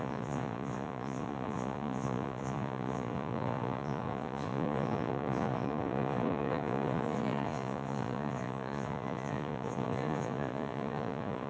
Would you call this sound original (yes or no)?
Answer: no